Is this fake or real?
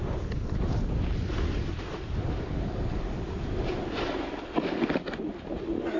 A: real